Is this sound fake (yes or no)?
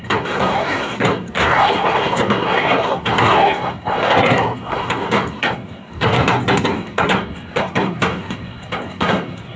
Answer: yes